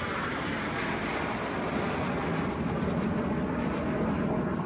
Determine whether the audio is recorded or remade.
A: recorded